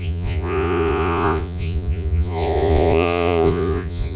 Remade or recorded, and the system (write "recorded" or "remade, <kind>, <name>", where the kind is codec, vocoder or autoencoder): remade, vocoder, Vocos